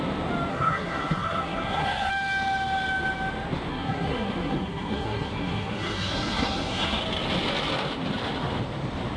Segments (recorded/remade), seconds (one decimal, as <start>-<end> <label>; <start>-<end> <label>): 0.0-0.5 recorded; 0.5-2.1 remade; 2.1-3.7 recorded; 3.7-7.0 remade; 7.0-9.2 recorded